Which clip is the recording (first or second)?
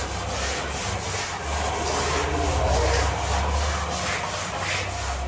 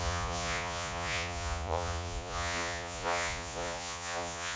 first